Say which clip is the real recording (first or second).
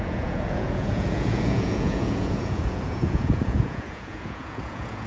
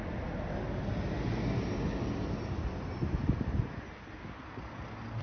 second